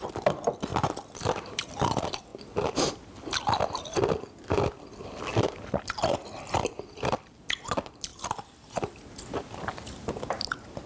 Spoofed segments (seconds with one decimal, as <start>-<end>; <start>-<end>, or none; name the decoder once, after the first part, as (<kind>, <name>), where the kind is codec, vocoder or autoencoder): 0.7-1.2 (vocoder, BigVGAN v2); 5.3-7.2